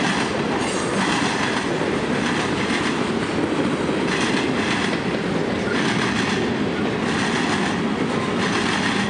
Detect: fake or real real